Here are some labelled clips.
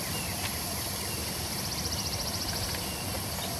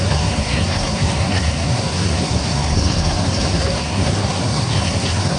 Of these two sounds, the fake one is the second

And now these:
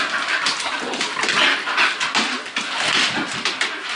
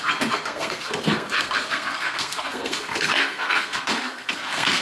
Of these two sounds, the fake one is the second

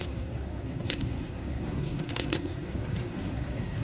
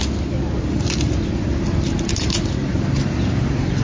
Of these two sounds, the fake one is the first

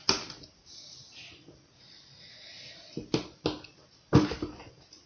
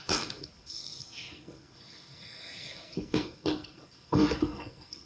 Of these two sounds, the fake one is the second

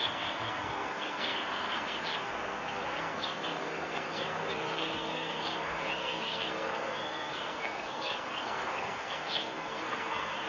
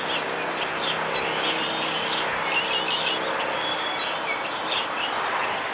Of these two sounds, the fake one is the first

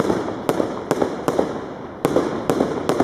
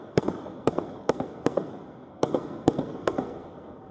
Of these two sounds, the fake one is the second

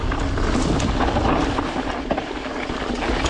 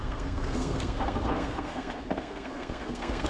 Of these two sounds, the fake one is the second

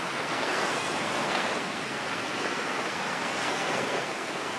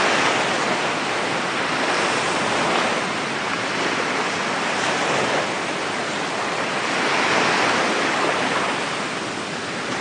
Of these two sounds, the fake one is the first